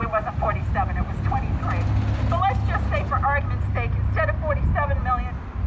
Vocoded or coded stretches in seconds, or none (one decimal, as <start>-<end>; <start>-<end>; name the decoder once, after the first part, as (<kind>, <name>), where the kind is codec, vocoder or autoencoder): none